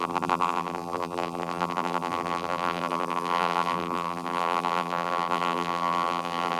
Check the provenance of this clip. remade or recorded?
remade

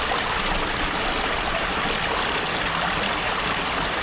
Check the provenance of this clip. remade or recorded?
recorded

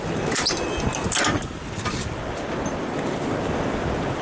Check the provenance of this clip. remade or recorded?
recorded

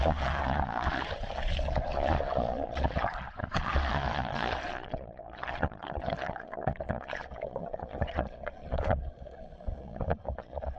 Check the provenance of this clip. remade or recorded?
remade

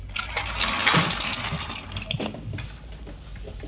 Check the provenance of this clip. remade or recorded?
recorded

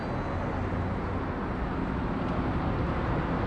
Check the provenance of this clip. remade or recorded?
recorded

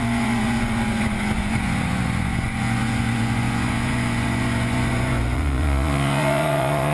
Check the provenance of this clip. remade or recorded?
remade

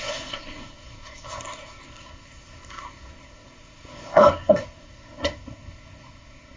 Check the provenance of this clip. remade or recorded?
remade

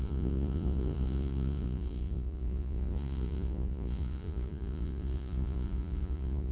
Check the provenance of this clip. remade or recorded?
remade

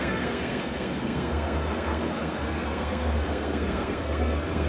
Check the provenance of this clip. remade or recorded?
remade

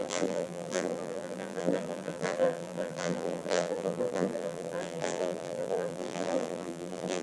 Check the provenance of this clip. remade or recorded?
remade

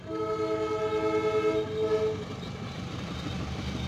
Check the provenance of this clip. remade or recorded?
recorded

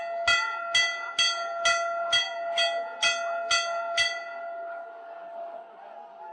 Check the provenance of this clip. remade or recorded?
recorded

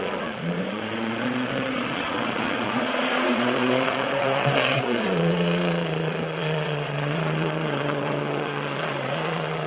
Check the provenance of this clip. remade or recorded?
remade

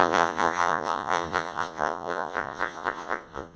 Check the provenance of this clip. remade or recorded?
remade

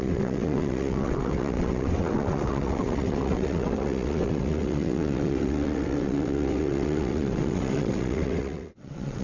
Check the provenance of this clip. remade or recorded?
remade